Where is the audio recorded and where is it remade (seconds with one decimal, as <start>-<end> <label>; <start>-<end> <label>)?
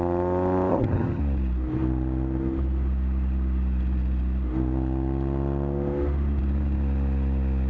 0.0-0.7 recorded; 0.7-1.2 remade; 1.2-7.7 recorded